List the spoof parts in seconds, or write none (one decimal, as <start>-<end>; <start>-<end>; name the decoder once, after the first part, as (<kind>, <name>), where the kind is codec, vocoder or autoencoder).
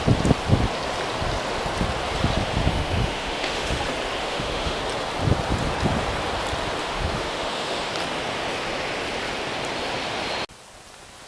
2.7-3.8 (autoencoder, DAC-VAE); 4.2-4.8; 6.8-7.9